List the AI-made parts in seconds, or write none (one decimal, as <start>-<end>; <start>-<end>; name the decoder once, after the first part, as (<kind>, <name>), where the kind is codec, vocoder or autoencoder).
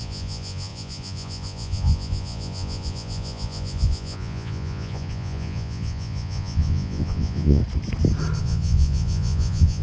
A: 0.0-7.6 (vocoder, Vocos); 8.4-9.8